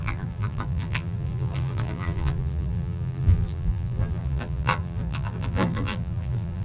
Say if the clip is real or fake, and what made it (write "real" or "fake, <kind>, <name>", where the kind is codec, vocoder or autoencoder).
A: fake, vocoder, BigVGAN v2